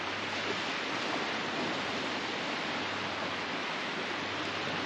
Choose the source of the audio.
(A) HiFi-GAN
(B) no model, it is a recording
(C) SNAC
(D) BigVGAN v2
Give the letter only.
B